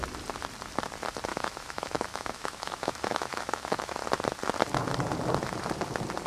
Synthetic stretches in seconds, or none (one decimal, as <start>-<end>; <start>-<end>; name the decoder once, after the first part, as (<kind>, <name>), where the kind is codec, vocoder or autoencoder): 1.3-3.9 (autoencoder, DAC-VAE)